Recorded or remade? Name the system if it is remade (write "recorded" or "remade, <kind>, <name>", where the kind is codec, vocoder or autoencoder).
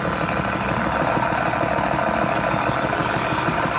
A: recorded